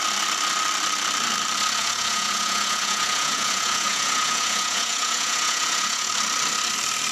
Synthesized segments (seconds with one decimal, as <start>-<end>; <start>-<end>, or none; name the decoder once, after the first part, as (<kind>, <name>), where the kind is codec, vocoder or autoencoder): 1.8-6.1 (vocoder, Vocos)